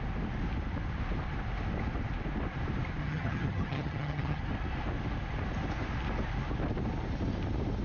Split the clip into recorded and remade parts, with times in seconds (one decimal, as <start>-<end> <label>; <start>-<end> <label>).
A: 0.0-3.0 recorded; 3.0-4.4 remade; 4.4-7.8 recorded